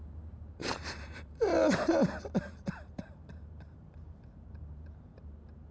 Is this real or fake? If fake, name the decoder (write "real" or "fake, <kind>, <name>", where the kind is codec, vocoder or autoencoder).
fake, vocoder, BigVGAN v2